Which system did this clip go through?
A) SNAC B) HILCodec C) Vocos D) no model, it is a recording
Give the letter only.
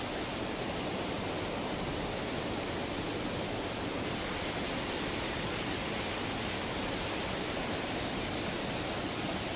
D